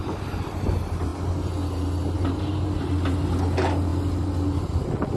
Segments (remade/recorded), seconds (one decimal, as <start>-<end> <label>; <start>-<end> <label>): 0.0-5.2 recorded